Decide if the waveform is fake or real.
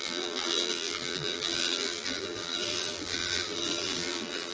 fake